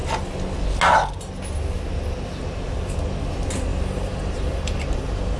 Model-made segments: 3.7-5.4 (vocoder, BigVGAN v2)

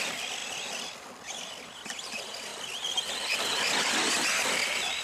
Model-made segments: none

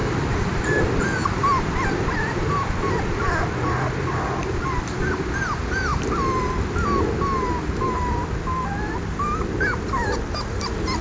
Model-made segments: 0.0-5.1 (vocoder, BigVGAN v2)

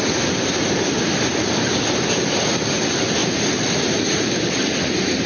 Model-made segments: 3.2-5.3 (vocoder, BigVGAN v2)

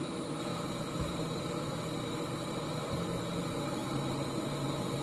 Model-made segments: 0.5-2.3 (vocoder, BigVGAN v2); 3.8-4.6